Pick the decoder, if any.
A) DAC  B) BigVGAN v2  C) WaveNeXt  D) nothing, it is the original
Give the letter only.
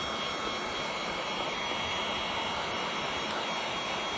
D